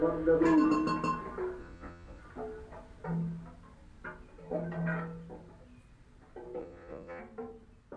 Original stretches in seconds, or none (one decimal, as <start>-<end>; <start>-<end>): 0.0-1.6; 2.2-6.6; 7.2-8.0